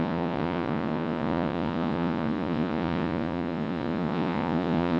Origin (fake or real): fake